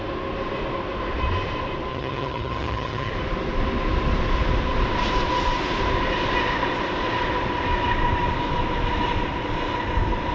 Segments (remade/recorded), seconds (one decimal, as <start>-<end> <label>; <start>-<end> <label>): 0.0-1.9 recorded; 1.9-3.1 remade; 3.1-10.3 recorded